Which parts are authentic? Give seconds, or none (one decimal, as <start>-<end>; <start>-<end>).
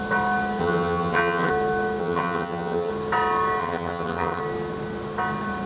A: 0.0-0.6; 1.5-2.0; 2.9-3.6; 4.4-5.7